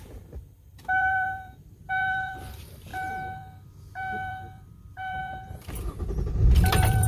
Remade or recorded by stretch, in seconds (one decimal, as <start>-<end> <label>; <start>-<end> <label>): 0.0-7.1 remade

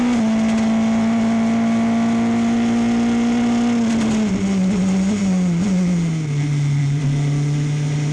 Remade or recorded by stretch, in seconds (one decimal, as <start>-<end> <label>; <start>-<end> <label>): 0.0-8.1 recorded